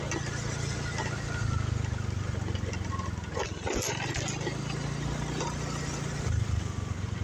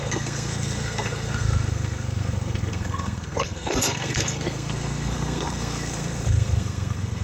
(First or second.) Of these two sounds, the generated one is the second